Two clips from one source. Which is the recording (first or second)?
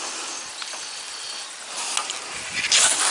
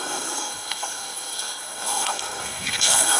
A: first